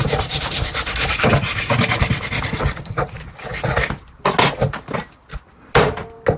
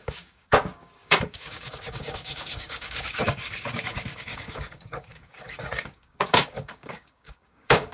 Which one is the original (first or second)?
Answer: first